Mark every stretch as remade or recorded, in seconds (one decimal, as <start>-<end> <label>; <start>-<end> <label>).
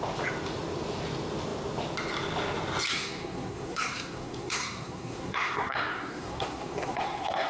0.0-2.9 recorded; 2.9-7.5 remade